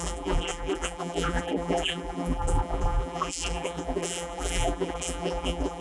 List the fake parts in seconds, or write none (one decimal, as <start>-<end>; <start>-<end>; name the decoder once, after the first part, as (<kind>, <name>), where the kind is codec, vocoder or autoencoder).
0.0-5.8 (vocoder, BigVGAN v2)